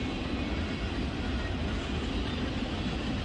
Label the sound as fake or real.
real